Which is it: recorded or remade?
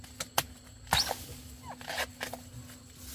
recorded